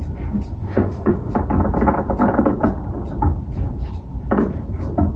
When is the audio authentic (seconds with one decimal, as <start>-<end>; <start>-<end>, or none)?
0.0-0.6; 1.3-5.2